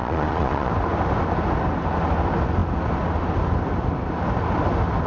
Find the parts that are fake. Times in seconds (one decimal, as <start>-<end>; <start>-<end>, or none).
0.0-0.7